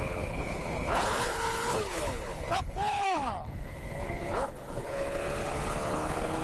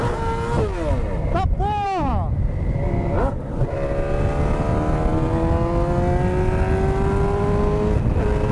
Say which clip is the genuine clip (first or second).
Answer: second